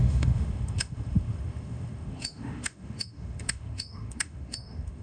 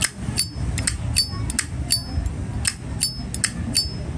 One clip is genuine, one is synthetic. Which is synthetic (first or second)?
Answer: first